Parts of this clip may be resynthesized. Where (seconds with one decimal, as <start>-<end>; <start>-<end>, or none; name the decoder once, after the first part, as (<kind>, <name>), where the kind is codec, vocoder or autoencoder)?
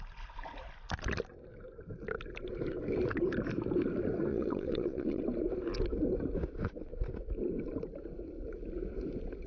4.3-5.2 (vocoder, Vocos)